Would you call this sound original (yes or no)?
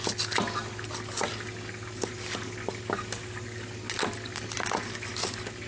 yes